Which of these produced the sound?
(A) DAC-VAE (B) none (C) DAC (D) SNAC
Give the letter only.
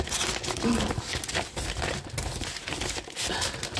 B